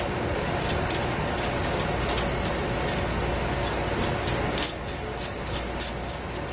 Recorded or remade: recorded